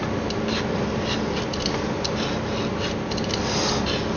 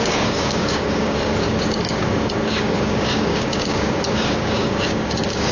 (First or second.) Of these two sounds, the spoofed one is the second